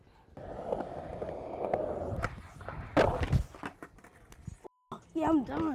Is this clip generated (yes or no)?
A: no